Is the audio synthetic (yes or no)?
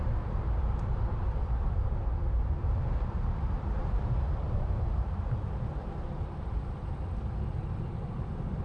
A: yes